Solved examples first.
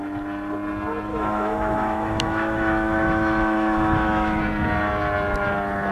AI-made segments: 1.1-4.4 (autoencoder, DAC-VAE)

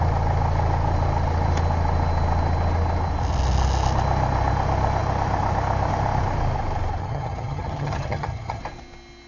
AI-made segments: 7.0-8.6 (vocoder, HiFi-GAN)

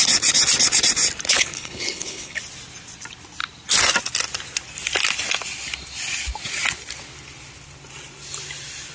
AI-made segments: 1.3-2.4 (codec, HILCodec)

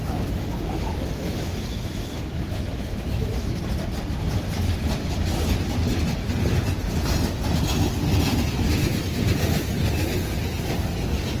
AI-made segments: 0.0-3.6 (autoencoder, DAC-VAE)